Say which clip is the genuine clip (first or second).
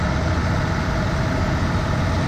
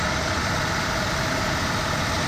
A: first